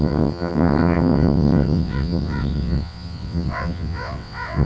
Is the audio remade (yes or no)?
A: yes